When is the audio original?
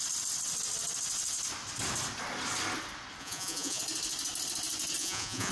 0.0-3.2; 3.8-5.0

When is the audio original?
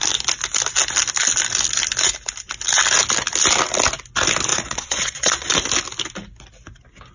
0.0-4.5; 5.5-7.1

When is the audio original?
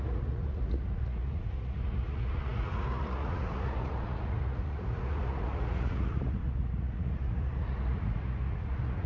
none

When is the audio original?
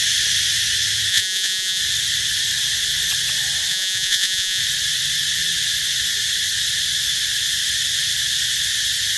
0.0-1.1; 1.8-3.7; 4.6-9.2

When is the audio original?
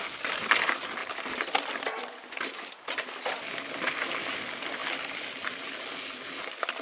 0.0-6.8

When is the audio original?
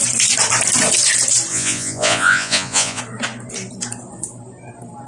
0.0-1.5; 3.0-5.1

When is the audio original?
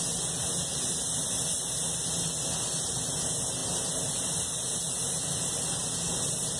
0.0-6.6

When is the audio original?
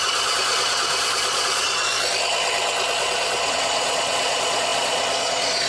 1.9-3.0